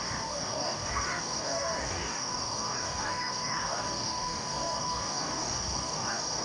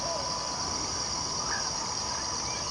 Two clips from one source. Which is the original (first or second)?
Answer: second